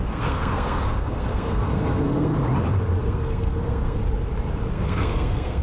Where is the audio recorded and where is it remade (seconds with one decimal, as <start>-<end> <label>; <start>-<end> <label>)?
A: 0.0-2.3 remade; 2.3-3.0 recorded; 3.0-4.0 remade; 4.0-4.7 recorded; 4.7-5.6 remade